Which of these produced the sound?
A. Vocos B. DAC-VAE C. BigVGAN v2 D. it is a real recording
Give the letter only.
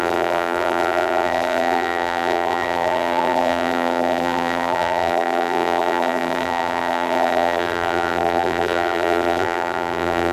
C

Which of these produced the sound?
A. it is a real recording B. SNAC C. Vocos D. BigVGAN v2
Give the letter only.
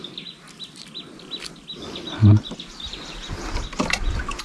D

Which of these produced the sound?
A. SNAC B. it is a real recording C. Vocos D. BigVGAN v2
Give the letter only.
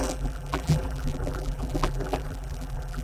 D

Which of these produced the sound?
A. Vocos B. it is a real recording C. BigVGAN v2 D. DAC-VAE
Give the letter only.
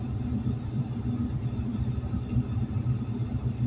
B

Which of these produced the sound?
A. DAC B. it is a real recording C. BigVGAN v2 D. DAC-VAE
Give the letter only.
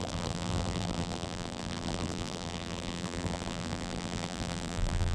C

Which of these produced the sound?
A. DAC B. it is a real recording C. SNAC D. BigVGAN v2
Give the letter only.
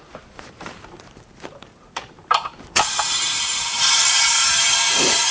D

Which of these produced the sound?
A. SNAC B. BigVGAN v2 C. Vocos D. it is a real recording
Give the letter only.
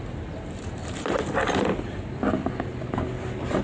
D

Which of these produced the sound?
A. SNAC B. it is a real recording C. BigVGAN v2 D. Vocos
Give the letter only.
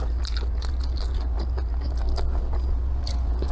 B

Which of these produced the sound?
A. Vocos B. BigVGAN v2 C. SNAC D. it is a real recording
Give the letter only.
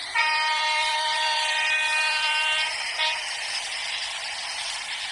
B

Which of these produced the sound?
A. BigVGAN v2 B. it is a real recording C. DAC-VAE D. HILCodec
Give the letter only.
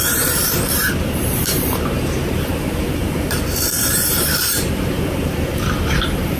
A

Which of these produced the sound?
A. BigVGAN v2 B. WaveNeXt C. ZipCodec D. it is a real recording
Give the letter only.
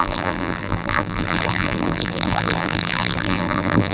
A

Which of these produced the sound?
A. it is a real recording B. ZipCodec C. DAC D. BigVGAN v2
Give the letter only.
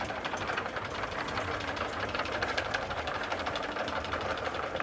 D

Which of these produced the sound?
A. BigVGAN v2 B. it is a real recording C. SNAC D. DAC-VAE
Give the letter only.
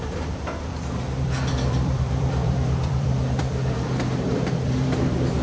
A